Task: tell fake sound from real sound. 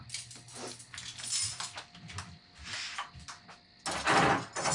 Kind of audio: real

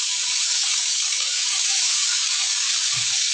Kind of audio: fake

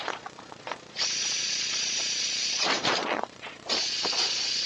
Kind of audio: fake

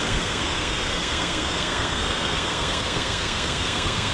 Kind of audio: fake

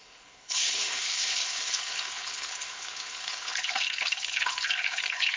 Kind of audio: fake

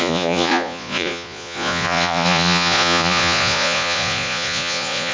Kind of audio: fake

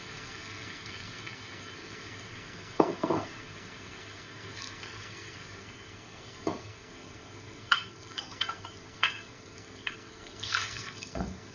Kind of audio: fake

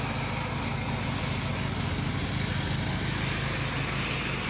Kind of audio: real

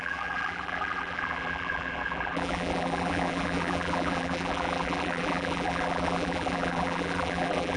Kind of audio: fake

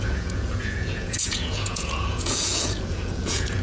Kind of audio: fake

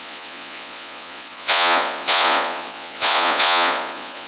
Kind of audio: fake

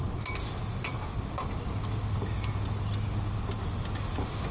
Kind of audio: real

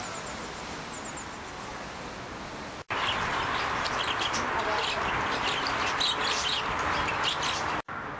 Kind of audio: real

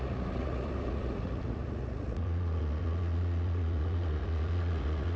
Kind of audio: fake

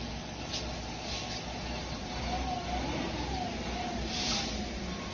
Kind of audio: real